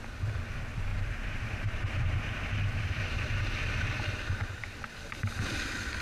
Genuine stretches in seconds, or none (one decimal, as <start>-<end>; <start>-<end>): 0.0-0.9; 4.5-6.0